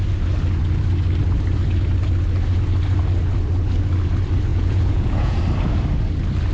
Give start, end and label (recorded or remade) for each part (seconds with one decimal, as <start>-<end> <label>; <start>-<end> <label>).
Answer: 0.0-4.5 recorded; 4.5-5.4 remade; 5.4-6.5 recorded